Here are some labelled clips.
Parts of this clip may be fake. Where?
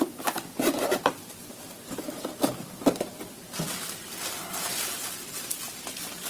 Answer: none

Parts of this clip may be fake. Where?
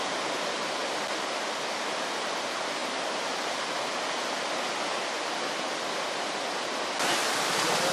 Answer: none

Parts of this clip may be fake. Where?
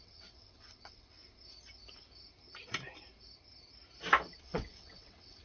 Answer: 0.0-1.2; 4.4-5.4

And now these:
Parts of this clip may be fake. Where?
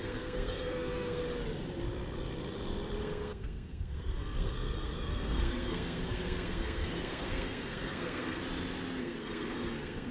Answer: 0.0-1.2; 3.0-8.4; 9.0-10.1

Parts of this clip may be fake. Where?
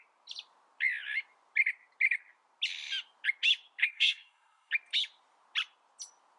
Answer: 3.8-4.7